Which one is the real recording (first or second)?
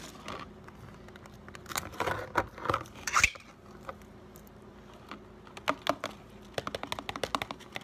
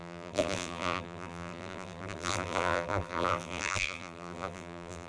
first